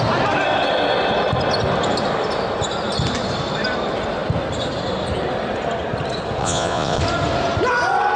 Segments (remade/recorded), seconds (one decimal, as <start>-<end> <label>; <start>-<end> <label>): 0.0-6.4 recorded; 6.4-7.0 remade; 7.0-8.2 recorded